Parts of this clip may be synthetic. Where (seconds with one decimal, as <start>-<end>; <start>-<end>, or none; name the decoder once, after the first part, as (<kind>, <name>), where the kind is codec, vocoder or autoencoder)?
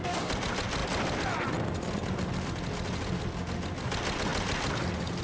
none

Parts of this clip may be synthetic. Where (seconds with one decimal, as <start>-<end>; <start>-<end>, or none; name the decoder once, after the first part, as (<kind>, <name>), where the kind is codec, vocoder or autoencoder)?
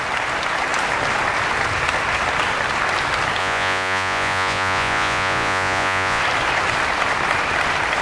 3.4-6.2 (vocoder, Vocos)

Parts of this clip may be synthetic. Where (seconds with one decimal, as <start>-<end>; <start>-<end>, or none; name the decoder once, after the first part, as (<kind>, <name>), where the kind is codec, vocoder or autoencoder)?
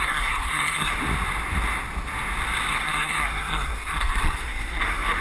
0.0-1.0 (codec, SNAC); 2.7-5.2